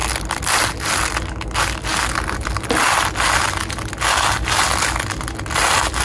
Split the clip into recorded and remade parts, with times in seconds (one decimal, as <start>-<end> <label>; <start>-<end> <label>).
0.0-6.0 recorded